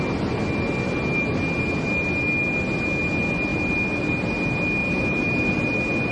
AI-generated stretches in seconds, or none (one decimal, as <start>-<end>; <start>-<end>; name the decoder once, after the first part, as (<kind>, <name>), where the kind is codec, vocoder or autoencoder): 4.8-5.3 (vocoder, BigVGAN v2)